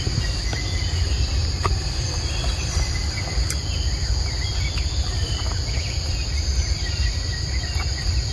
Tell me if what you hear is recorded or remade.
remade